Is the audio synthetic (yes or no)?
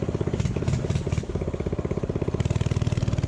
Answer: no